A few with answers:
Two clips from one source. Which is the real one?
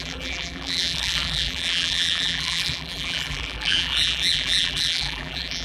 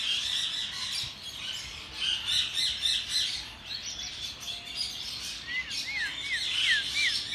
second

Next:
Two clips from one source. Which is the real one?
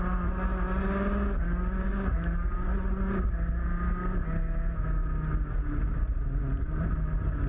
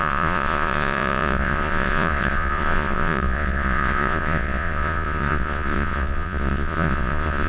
first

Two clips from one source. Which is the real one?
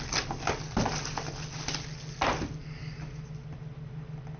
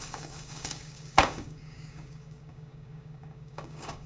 first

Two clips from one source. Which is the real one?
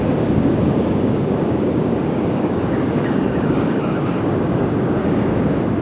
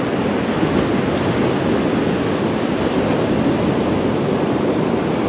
second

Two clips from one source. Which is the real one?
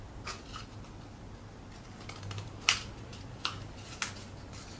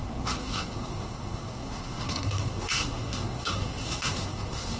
first